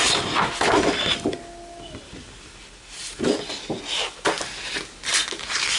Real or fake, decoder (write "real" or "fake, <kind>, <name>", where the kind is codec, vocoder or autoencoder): real